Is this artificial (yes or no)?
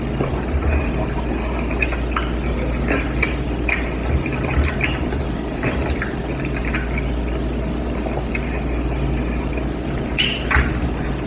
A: no